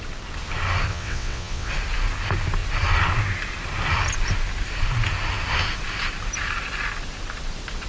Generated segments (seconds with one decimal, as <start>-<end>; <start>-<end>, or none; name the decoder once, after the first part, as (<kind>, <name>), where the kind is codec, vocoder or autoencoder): 0.9-1.7 (vocoder, WaveNeXt)